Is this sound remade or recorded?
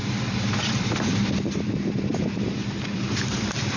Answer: remade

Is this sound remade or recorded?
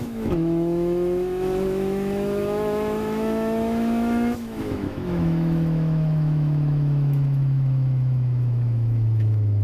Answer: remade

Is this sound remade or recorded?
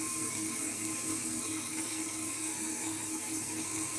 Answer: remade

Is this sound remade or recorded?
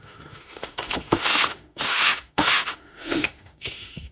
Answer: remade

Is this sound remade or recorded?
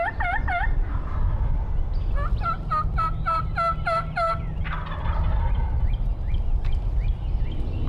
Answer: recorded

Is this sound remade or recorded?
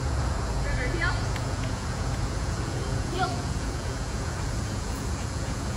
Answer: remade